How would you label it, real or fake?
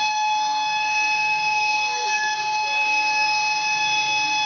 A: fake